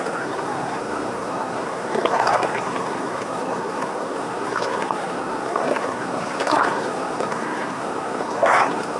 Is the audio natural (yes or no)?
no